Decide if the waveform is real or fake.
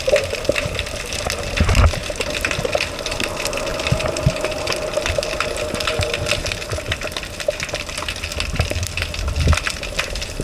real